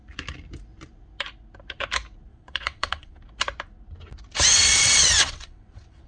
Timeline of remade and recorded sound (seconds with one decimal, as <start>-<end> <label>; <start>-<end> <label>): 0.0-2.3 recorded; 2.3-3.2 remade; 3.2-4.5 recorded; 4.5-6.1 remade